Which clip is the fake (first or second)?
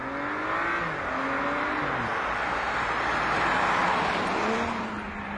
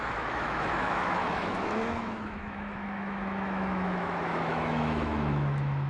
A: second